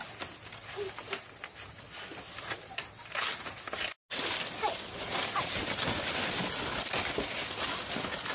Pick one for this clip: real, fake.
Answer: real